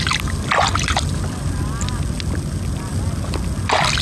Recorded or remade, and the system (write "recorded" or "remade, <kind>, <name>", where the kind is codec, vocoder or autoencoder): recorded